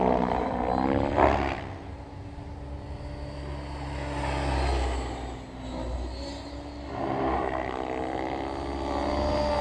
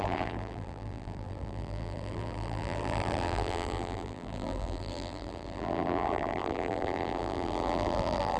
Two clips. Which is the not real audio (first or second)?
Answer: second